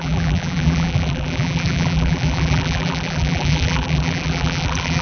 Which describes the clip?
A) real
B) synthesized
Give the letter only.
B